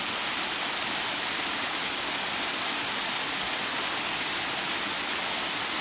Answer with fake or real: real